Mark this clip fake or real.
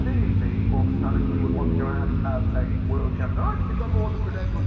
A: real